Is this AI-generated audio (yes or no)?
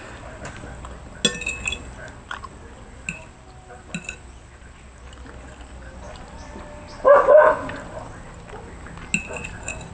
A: no